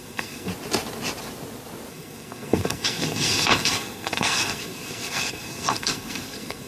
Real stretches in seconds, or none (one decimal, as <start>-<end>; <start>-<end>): 0.5-1.9